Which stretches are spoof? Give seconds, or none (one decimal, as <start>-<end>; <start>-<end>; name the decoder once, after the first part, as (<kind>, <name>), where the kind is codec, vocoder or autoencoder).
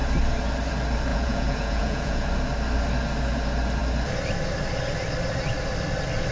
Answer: 1.1-2.3 (vocoder, Vocos)